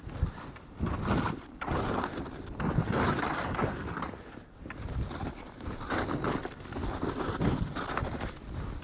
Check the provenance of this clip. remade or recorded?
recorded